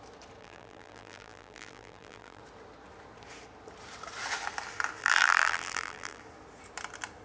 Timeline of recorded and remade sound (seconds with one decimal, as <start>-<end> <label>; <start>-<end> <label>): 0.0-0.4 recorded; 0.4-2.4 remade; 2.4-5.0 recorded; 5.0-6.2 remade; 6.2-7.2 recorded